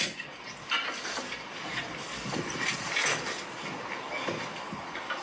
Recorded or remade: recorded